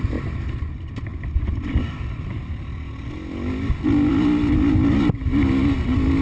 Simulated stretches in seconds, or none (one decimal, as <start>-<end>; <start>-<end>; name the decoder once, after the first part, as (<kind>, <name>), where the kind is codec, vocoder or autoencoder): none